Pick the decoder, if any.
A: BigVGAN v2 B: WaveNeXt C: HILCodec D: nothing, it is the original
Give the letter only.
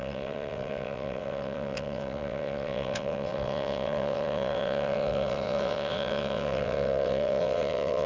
B